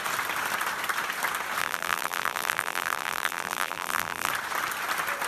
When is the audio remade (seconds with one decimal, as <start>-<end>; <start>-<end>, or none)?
1.6-4.3